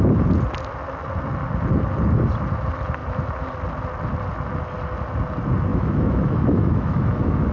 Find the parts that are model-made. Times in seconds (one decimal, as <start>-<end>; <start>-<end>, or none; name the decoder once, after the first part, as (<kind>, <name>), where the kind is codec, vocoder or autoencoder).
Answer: 5.7-7.5 (autoencoder, DAC-VAE)